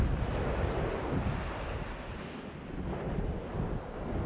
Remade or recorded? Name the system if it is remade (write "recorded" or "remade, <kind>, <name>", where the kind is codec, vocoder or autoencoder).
recorded